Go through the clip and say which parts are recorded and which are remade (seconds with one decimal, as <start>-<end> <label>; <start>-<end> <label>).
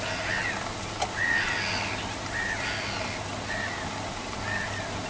0.0-5.1 recorded